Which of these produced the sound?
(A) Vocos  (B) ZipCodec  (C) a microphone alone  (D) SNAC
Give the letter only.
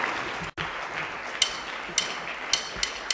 C